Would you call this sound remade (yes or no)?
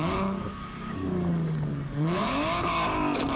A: yes